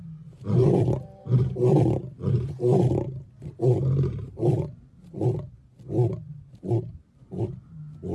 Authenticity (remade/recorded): recorded